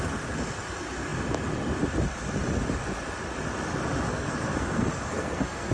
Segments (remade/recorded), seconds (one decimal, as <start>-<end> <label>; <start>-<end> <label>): 0.0-4.1 recorded; 4.1-5.7 remade